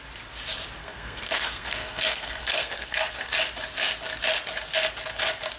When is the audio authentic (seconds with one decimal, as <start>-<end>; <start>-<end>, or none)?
0.0-0.8; 3.3-5.6